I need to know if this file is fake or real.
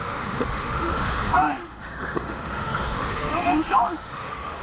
fake